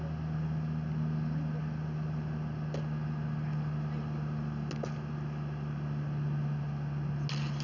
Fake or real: real